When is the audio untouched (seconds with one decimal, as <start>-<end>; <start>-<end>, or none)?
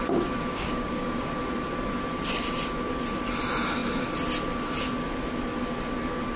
0.0-0.5; 1.4-6.4